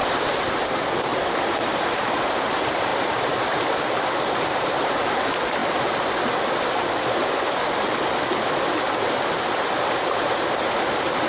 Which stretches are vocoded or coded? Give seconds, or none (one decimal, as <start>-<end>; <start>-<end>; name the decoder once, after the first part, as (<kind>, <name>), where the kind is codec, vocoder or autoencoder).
1.0-5.6 (vocoder, BigVGAN v2); 10.0-11.3